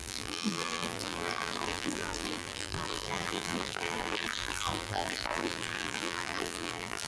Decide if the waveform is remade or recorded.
remade